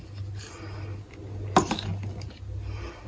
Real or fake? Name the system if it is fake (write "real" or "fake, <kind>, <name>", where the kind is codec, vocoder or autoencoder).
real